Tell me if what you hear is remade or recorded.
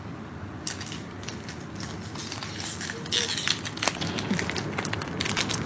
recorded